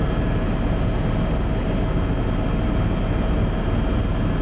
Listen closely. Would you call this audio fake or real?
real